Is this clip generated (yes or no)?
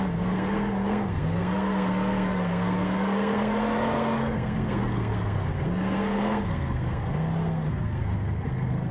yes